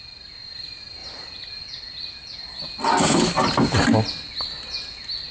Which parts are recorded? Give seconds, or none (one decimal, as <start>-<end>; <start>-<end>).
0.0-5.3